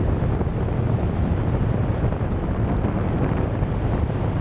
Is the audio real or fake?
fake